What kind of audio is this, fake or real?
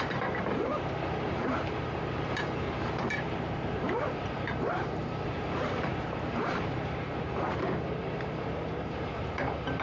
fake